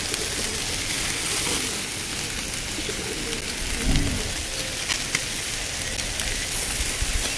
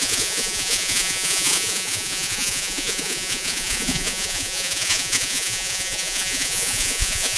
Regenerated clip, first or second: second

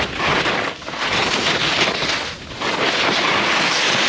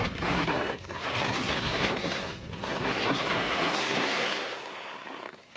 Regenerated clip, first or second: second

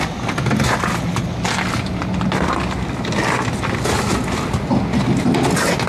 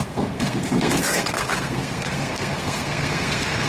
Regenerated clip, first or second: second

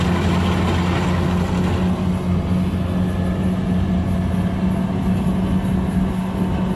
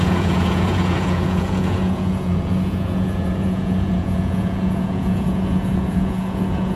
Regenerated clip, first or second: second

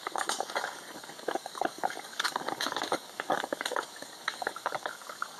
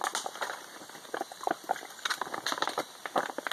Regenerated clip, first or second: first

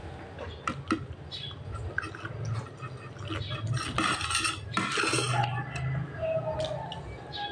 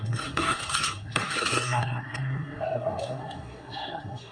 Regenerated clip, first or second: second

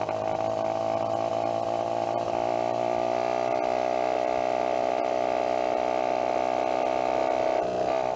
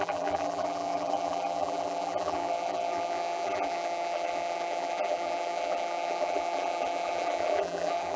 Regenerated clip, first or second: second